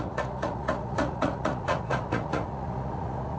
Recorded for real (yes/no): no